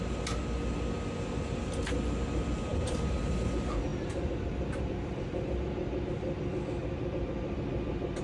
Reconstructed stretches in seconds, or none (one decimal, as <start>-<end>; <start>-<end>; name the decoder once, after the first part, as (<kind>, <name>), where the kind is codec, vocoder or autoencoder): none